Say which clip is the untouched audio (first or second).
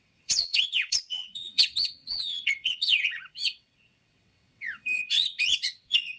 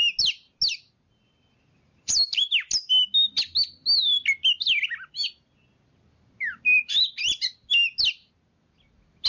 second